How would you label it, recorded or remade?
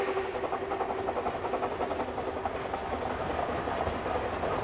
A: recorded